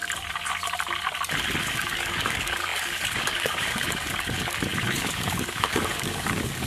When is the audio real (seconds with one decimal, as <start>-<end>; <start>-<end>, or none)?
0.0-1.6